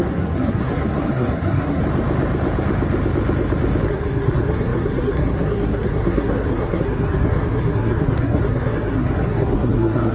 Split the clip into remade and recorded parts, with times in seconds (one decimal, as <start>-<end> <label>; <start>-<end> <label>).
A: 0.0-1.8 remade; 1.8-3.8 recorded; 3.8-10.1 remade